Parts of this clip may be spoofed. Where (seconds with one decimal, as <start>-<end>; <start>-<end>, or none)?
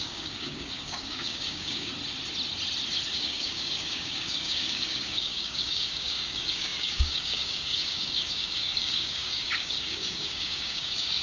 0.0-1.9; 3.1-11.2